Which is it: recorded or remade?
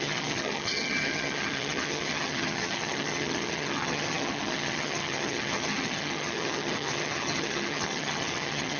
remade